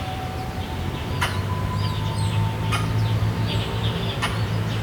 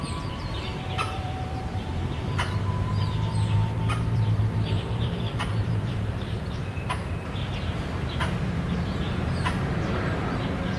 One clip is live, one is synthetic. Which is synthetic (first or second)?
second